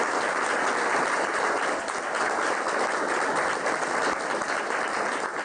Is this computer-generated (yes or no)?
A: yes